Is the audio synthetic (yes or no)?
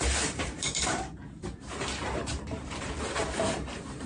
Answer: yes